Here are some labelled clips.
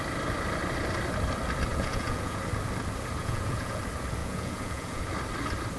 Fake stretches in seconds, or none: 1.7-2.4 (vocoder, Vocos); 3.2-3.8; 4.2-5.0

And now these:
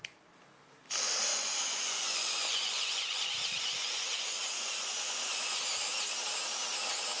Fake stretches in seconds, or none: 1.3-5.6 (vocoder, Vocos)

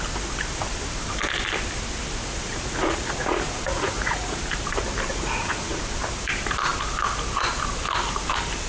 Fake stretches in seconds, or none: 2.2-4.4 (vocoder, Vocos); 5.1-5.8

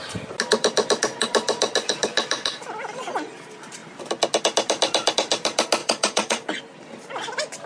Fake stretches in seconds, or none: 5.8-6.6 (vocoder, Vocos)

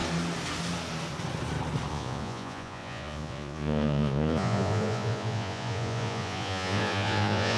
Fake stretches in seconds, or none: 1.9-7.6 (vocoder, Vocos)

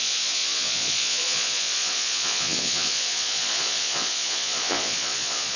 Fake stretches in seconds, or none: 0.0-5.6 (vocoder, Vocos)

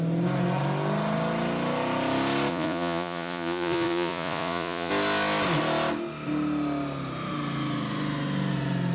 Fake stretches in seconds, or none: 2.5-4.9 (vocoder, Vocos)

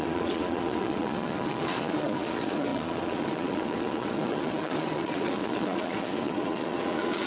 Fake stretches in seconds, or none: 0.0-7.3 (vocoder, Vocos)